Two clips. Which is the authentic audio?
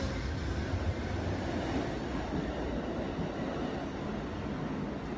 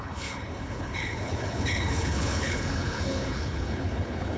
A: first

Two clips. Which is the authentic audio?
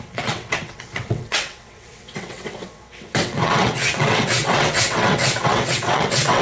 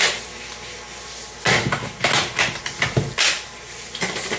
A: second